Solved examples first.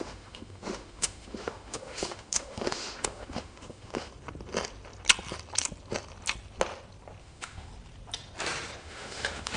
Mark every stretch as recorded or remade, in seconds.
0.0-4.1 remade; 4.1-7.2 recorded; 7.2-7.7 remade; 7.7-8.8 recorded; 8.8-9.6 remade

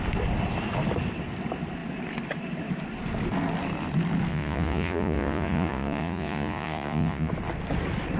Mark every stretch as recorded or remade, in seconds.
0.0-4.3 recorded; 4.3-7.3 remade; 7.3-8.2 recorded

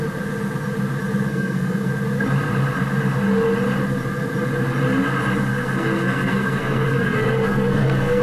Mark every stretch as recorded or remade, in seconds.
0.0-1.3 recorded; 1.3-1.9 remade; 1.9-5.5 recorded; 5.5-8.2 remade

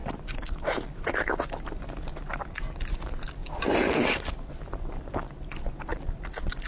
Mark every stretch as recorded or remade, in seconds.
0.0-2.4 remade; 2.4-3.4 recorded; 3.4-4.2 remade; 4.2-6.7 recorded

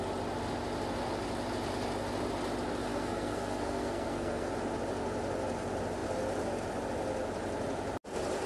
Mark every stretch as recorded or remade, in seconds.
0.0-2.9 recorded; 2.9-4.5 remade; 4.5-8.5 recorded

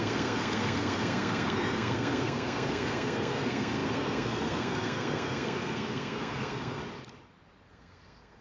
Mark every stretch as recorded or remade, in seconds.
0.0-6.8 remade; 6.8-7.7 recorded; 7.7-8.4 remade

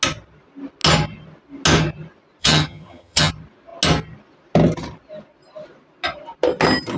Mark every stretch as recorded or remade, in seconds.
0.0-2.4 recorded; 2.4-3.3 remade; 3.3-7.0 recorded

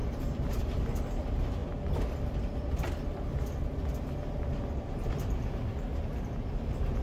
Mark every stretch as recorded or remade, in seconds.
0.0-0.6 remade; 0.6-7.0 recorded